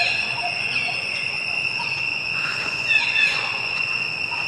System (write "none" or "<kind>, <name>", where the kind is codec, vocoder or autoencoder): vocoder, Vocos